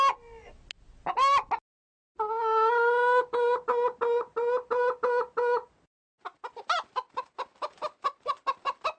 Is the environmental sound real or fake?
real